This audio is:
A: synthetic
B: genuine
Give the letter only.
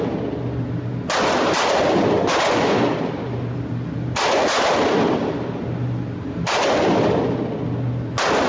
B